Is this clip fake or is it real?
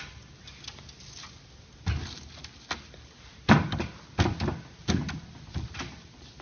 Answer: real